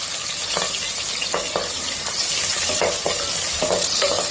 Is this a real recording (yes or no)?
yes